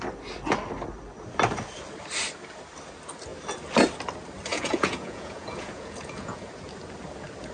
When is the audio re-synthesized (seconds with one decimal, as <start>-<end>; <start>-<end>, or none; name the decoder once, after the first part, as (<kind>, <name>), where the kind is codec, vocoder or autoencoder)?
4.5-6.5 (vocoder, Vocos)

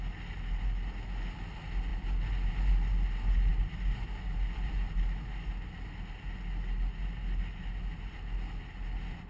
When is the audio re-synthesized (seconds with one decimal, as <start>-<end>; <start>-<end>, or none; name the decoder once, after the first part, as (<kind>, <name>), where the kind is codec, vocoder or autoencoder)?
none

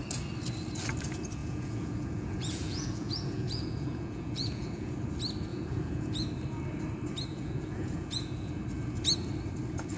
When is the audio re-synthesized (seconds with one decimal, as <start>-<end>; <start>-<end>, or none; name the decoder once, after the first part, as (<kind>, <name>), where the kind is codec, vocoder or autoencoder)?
1.4-4.9 (vocoder, Vocos); 5.5-6.3; 7.3-8.5